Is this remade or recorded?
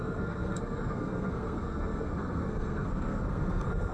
remade